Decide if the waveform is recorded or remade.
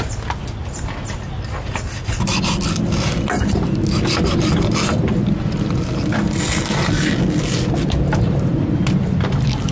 recorded